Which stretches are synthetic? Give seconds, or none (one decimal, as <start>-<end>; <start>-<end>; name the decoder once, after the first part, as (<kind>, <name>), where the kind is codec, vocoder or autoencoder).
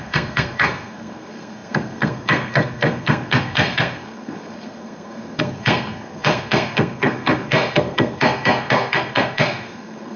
0.0-10.2 (codec, SNAC)